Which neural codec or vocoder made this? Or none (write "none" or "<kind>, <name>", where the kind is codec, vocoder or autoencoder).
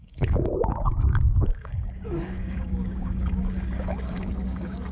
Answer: codec, DAC